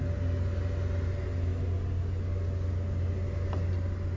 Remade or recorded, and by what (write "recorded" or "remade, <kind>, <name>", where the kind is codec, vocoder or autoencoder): recorded